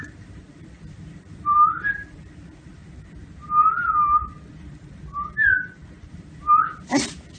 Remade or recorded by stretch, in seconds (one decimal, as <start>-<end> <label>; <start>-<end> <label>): 0.0-2.8 remade; 2.8-4.5 recorded; 4.5-5.5 remade; 5.5-6.1 recorded; 6.1-7.4 remade